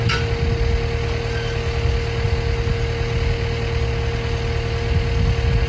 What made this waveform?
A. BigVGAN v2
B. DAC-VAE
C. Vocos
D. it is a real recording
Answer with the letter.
D